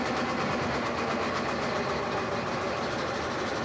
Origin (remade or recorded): recorded